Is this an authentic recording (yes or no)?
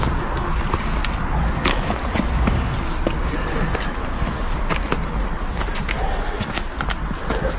yes